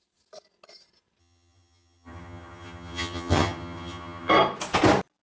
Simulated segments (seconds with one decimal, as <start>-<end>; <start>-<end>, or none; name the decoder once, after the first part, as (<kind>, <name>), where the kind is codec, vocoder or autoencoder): 1.2-4.3 (vocoder, HiFi-GAN)